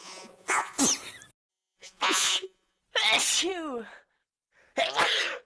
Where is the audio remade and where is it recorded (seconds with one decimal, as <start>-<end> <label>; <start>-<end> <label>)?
0.0-0.8 remade; 0.8-1.5 recorded; 1.5-2.8 remade; 2.8-5.5 recorded